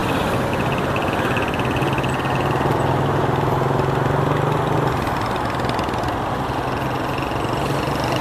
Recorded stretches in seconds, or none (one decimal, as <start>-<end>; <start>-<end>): 0.0-8.2